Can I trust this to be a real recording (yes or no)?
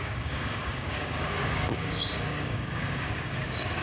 no